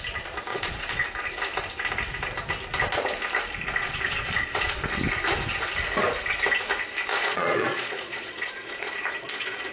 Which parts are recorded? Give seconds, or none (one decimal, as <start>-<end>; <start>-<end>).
0.0-0.5; 1.0-3.8; 4.8-7.1

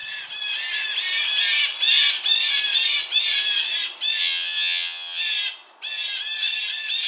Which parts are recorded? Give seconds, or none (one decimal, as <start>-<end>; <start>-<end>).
0.0-4.2; 5.2-7.1

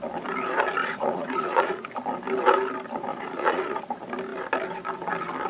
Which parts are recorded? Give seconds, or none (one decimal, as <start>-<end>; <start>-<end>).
0.0-0.8; 1.9-3.1; 3.8-5.5

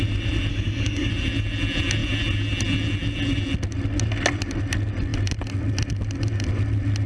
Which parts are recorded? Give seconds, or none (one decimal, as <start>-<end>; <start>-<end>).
0.0-0.5; 1.1-7.1

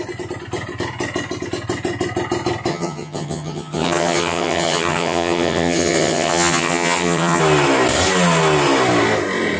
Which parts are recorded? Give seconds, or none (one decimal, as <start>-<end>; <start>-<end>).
0.0-2.7; 7.4-9.6